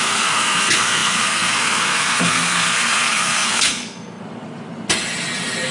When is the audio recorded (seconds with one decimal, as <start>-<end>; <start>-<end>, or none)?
4.2-5.7